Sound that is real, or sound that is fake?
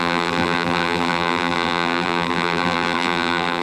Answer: fake